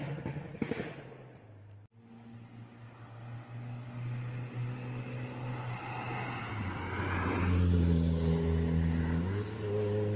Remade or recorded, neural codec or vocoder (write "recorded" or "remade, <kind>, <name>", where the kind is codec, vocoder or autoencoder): recorded